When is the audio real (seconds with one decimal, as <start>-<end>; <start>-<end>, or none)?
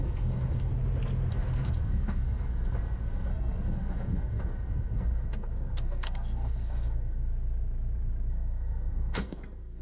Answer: 0.7-1.3; 7.3-8.3